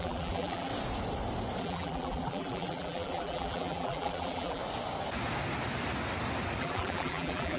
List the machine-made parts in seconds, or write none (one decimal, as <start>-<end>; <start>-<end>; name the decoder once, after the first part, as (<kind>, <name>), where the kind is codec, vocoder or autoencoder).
0.0-0.7 (vocoder, BigVGAN v2); 1.6-4.6; 6.6-7.6